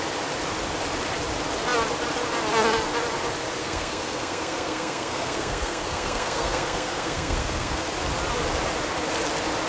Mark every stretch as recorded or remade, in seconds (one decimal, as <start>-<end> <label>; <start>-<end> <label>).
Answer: 0.0-3.6 recorded; 3.6-7.9 remade; 7.9-9.7 recorded